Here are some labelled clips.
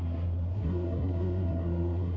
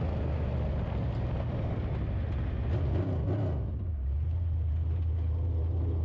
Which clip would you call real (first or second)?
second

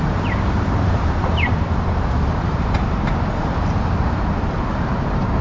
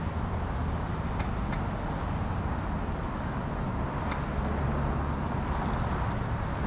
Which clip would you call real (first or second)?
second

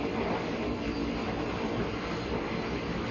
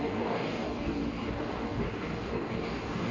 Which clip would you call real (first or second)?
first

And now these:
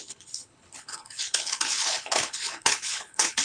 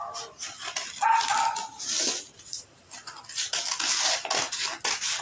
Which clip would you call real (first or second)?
second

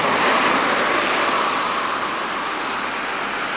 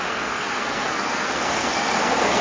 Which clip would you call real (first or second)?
first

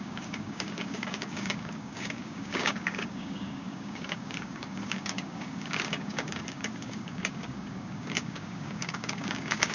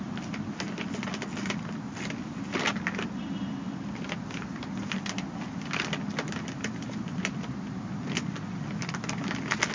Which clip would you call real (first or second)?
second